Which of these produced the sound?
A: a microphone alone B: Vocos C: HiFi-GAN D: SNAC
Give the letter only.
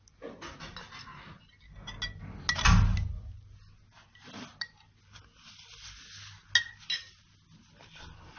A